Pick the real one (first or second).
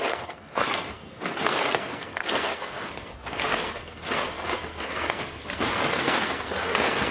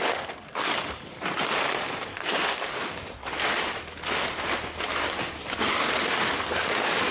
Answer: second